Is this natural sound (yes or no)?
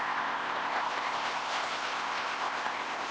no